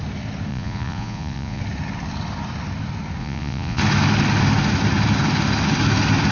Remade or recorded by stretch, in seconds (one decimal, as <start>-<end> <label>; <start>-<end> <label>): 0.0-0.5 recorded; 0.5-1.6 remade; 1.6-3.2 recorded; 3.2-3.8 remade; 3.8-6.3 recorded